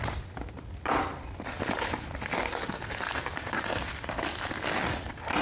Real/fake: real